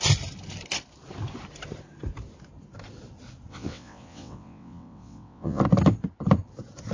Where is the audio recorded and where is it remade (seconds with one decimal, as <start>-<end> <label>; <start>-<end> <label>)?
0.0-3.5 recorded; 3.5-5.6 remade; 5.6-6.9 recorded